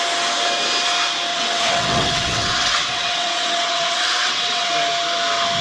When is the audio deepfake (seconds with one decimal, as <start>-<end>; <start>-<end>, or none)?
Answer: 1.3-4.7